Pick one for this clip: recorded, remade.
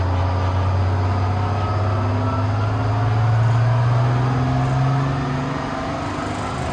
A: recorded